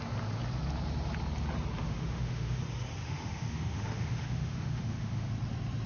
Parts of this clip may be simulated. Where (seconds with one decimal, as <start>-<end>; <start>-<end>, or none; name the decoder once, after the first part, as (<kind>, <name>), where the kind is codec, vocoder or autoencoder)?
1.8-2.6 (autoencoder, DAC-VAE); 3.0-5.3

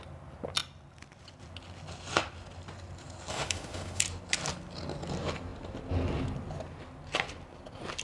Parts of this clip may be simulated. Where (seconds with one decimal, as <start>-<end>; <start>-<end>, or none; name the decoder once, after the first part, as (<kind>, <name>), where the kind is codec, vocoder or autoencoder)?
3.3-4.0 (autoencoder, DAC-VAE)